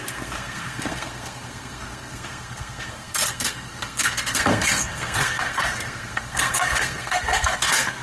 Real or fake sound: fake